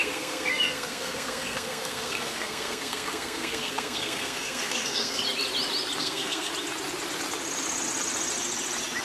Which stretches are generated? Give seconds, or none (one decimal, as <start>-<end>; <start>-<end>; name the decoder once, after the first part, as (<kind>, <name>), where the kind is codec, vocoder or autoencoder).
0.0-5.2 (codec, SNAC); 6.0-6.5